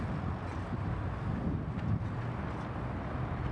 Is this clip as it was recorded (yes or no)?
yes